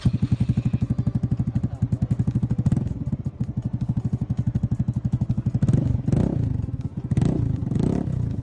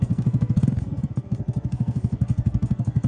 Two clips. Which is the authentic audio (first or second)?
first